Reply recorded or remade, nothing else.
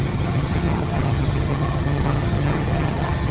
remade